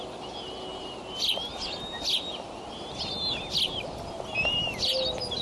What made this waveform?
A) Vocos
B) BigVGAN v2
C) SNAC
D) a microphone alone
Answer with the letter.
D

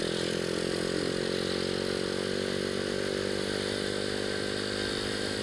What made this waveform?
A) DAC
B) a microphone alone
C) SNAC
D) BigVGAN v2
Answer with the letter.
B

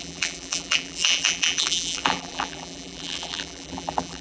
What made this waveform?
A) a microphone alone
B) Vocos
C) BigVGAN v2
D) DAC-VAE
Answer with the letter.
C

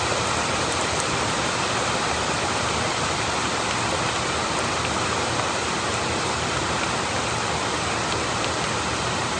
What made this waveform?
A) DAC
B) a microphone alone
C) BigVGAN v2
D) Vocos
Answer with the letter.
B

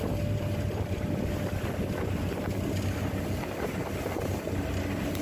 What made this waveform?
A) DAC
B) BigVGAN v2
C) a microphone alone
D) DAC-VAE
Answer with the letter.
C